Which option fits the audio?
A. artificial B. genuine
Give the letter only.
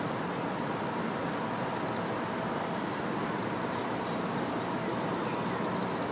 B